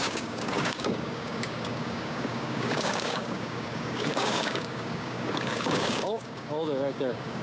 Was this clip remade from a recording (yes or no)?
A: yes